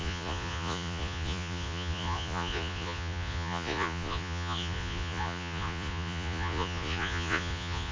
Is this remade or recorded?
remade